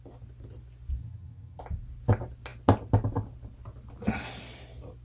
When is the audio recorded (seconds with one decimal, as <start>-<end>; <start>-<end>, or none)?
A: 0.0-1.0; 1.6-5.0